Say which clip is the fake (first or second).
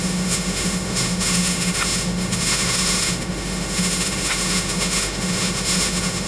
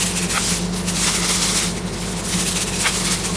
first